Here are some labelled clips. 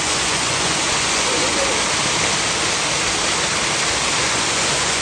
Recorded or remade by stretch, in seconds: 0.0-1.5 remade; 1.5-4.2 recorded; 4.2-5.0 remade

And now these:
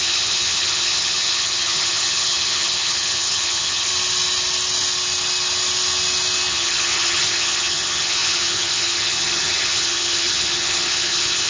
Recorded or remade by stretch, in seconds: 0.0-3.9 remade; 3.9-6.5 recorded; 6.5-11.5 remade